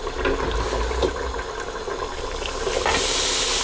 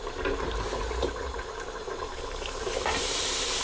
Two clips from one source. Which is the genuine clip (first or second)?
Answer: first